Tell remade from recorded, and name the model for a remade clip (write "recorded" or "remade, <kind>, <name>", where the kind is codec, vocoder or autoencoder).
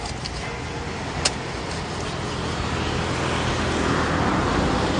recorded